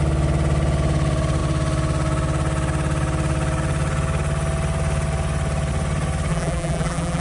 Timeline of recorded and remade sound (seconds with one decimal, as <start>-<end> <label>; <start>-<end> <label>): 0.0-6.3 recorded; 6.3-7.2 remade